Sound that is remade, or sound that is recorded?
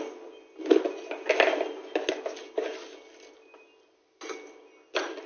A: recorded